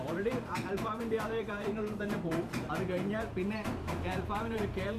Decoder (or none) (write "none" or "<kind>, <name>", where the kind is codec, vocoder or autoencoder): vocoder, BigVGAN v2